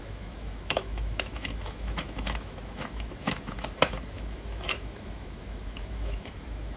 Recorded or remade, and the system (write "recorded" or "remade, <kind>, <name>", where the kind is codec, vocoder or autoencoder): remade, autoencoder, DAC-VAE